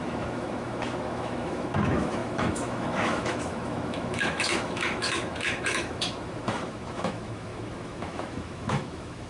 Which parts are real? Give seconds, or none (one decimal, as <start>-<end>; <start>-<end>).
none